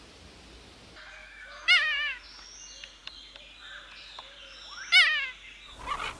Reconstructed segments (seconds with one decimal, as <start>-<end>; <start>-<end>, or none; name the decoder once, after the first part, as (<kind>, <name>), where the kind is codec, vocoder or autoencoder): 1.2-2.2 (autoencoder, DAC-VAE)